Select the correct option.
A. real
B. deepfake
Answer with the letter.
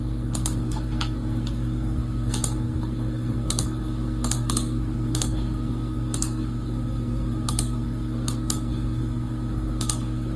B